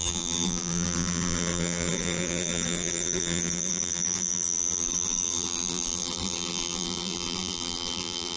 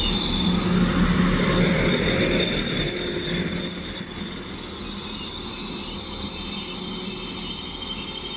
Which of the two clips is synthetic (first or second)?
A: first